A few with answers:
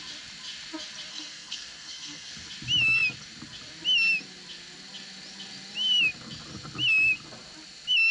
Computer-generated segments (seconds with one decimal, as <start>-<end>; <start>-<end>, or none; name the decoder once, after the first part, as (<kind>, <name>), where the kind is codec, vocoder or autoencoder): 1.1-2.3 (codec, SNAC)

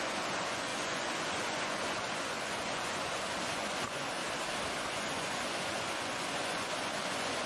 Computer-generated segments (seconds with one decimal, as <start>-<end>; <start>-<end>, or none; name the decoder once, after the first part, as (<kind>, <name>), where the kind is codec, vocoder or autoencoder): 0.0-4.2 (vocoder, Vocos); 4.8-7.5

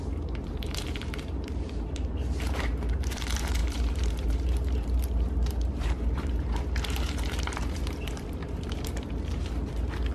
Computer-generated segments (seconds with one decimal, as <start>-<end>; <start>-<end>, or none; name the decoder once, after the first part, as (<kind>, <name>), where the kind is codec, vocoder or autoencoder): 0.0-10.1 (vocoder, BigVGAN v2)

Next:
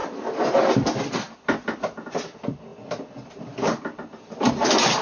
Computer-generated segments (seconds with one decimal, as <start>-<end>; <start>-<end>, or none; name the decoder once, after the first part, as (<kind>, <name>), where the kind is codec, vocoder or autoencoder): none

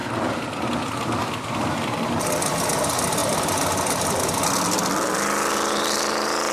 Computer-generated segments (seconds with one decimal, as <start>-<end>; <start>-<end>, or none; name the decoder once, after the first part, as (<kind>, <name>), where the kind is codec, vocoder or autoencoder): 0.0-2.6 (vocoder, BigVGAN v2); 3.2-4.2